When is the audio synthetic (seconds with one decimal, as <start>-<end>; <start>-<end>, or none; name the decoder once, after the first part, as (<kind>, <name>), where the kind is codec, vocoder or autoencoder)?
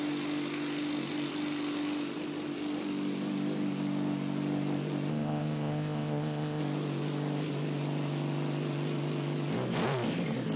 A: 5.1-6.6 (codec, ZipCodec)